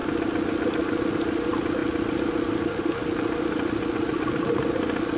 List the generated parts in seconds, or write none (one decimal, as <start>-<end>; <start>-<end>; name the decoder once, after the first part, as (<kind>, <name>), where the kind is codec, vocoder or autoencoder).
none